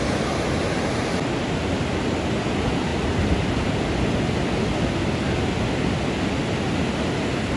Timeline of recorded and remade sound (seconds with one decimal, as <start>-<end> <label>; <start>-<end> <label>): 0.0-7.6 recorded